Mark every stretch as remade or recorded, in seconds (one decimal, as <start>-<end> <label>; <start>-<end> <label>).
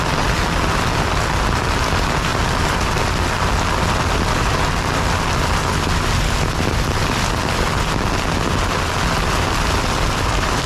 0.0-10.7 recorded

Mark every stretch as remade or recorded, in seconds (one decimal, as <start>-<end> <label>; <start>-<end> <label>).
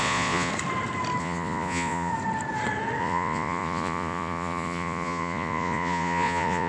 0.0-0.5 remade; 0.5-1.2 recorded; 1.2-2.1 remade; 2.1-3.0 recorded; 3.0-6.7 remade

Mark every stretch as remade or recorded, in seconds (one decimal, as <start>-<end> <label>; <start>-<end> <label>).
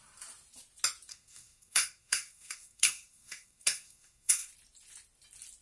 0.0-1.1 recorded; 1.1-4.5 remade; 4.5-5.6 recorded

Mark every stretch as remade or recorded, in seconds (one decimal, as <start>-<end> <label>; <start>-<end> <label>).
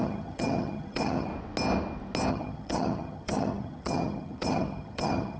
0.0-1.3 remade; 1.3-2.3 recorded; 2.3-5.4 remade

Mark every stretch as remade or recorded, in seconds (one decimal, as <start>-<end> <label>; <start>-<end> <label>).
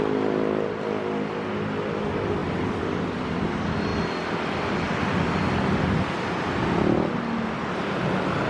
0.0-2.4 recorded; 2.4-3.4 remade; 3.4-8.5 recorded